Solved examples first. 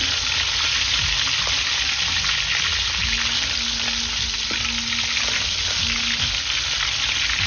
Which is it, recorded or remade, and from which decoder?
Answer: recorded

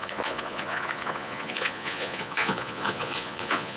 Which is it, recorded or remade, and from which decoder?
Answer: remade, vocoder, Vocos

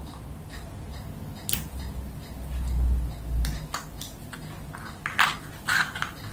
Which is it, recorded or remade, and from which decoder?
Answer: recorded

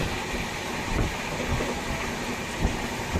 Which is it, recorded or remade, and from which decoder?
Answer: recorded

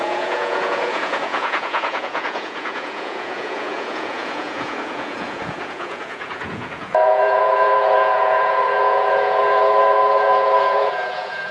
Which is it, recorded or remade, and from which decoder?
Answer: remade, vocoder, Vocos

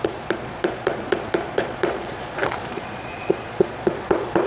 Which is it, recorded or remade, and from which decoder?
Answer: remade, vocoder, Vocos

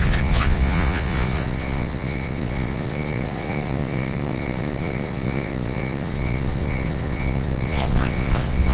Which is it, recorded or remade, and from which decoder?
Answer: remade, vocoder, Vocos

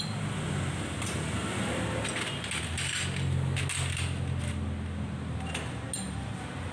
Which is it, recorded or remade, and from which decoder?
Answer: recorded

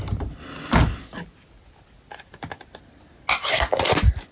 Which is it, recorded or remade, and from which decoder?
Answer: recorded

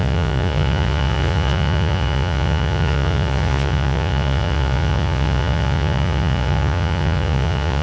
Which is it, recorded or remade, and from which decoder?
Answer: remade, vocoder, Vocos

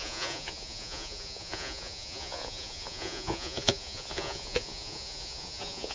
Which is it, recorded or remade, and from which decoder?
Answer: remade, vocoder, Vocos